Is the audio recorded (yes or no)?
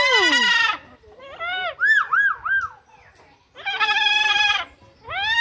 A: yes